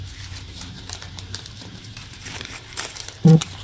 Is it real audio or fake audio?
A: fake